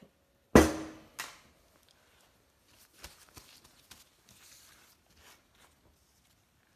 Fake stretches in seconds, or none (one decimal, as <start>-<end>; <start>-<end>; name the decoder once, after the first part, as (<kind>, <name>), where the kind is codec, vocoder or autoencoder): none